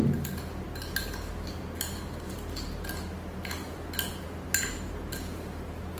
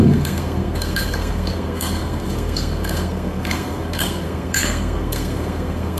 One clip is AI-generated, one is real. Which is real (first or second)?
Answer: first